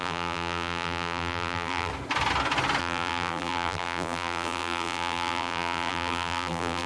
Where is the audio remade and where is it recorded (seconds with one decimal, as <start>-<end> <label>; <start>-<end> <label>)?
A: 0.0-1.9 remade; 1.9-2.8 recorded; 2.8-6.9 remade